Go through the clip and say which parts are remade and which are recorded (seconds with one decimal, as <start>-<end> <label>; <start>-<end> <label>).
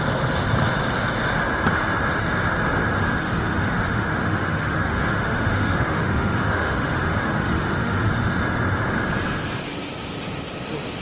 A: 0.0-3.0 recorded; 3.0-8.1 remade; 8.1-11.0 recorded